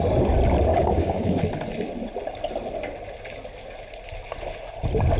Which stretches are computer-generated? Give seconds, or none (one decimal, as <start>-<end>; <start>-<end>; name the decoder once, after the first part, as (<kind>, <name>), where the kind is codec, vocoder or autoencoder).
0.7-1.4 (codec, DAC)